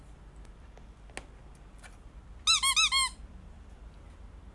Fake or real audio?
real